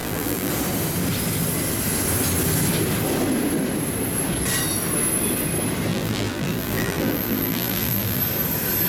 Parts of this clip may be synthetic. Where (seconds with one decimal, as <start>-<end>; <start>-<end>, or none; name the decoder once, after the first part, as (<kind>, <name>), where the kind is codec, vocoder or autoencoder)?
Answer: 0.0-0.5 (vocoder, BigVGAN v2); 5.9-8.2